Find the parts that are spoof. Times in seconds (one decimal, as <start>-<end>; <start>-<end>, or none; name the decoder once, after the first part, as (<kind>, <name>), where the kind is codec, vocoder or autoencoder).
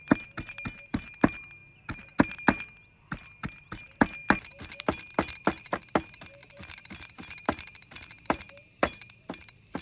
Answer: 6.4-9.3 (vocoder, BigVGAN v2)